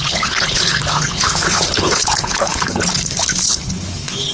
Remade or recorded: remade